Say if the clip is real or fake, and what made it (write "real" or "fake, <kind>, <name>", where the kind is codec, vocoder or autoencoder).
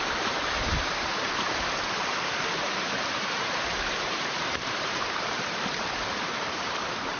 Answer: fake, vocoder, BigVGAN v2